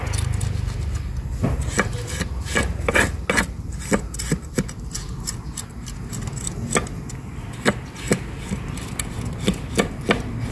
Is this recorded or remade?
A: recorded